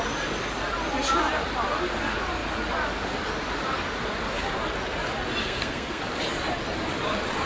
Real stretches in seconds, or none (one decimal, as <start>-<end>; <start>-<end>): 0.0-5.4; 6.0-7.5